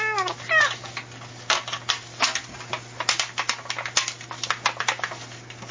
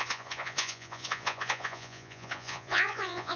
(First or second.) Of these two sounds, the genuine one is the first